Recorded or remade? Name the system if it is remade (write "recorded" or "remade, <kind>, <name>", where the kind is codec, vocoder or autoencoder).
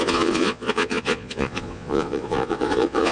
remade, vocoder, Vocos